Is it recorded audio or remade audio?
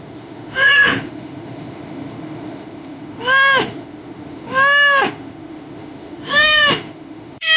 remade